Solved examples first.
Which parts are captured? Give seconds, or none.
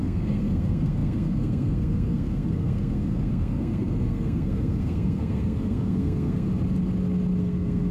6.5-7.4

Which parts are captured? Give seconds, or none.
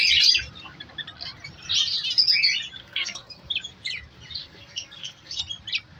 0.0-2.8; 3.5-4.4; 5.4-6.0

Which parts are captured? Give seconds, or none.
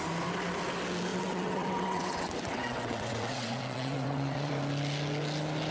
0.0-1.1; 4.5-5.7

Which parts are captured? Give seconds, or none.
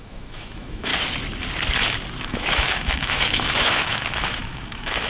0.9-2.3